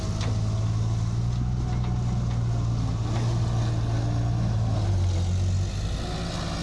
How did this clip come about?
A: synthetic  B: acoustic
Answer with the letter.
B